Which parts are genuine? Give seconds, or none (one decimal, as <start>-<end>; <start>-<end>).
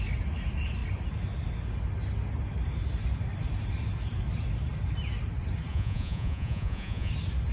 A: 0.0-5.7; 7.1-7.5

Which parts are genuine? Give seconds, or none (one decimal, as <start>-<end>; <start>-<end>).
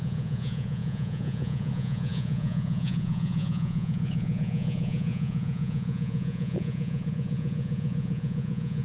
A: none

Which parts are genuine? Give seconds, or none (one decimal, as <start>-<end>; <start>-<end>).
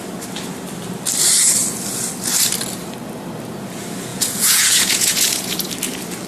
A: 0.0-4.1; 5.7-6.3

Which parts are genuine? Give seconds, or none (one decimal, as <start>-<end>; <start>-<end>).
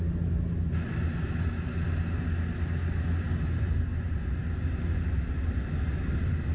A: 0.0-6.5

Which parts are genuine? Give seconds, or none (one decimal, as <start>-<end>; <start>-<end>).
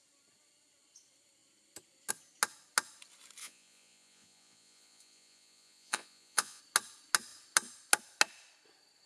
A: 0.0-3.4; 6.6-9.1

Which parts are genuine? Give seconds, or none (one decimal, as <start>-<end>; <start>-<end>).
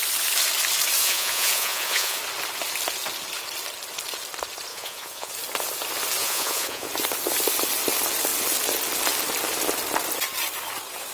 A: 0.0-1.0; 2.2-4.7; 5.3-6.2; 6.9-11.1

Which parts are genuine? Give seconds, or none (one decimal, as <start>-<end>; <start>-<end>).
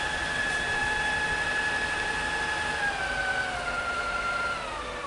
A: 0.0-5.1